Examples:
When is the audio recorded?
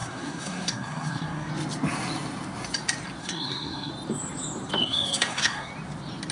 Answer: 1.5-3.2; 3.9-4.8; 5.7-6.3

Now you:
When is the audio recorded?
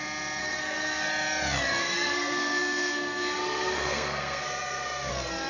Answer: 0.0-0.4; 1.1-1.8; 5.1-5.5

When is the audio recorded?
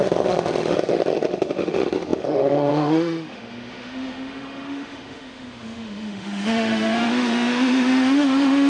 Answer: none